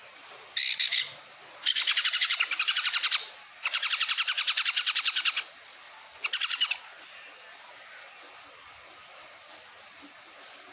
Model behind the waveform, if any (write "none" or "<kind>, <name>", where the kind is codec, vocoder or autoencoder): none